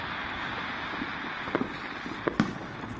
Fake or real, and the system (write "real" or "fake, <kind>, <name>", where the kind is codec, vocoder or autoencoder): real